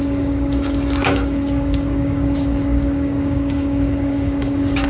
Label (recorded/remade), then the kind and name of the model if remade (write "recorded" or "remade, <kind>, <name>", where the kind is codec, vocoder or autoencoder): remade, codec, DAC